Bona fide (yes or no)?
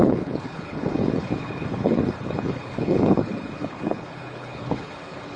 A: no